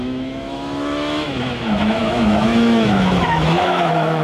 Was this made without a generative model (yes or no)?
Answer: no